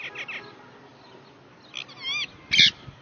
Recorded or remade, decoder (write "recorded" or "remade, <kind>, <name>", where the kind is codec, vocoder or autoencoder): recorded